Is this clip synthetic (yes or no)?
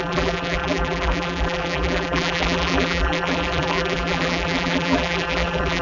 yes